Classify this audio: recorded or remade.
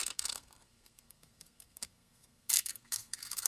remade